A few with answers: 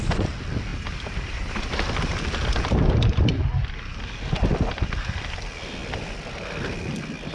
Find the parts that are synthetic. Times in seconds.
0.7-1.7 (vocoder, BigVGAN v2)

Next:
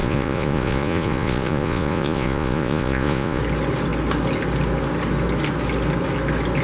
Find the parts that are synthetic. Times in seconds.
0.0-3.4 (vocoder, Vocos)

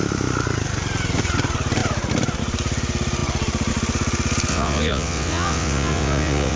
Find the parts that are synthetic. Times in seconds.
4.5-6.6 (vocoder, WaveNeXt)

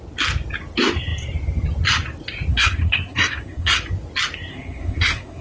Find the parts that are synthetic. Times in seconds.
2.5-3.8 (codec, SNAC); 4.5-5.4

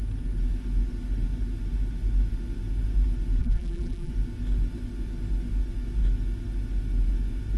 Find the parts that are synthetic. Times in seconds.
3.4-4.1 (vocoder, BigVGAN v2)

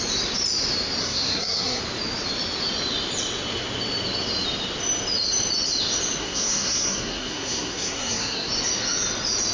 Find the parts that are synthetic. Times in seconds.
1.0-1.8 (codec, SNAC); 6.2-8.5

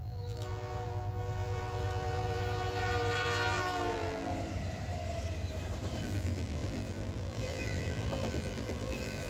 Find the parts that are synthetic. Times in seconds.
0.0-4.3 (vocoder, BigVGAN v2); 6.0-9.3